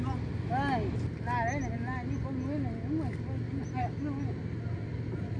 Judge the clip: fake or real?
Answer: real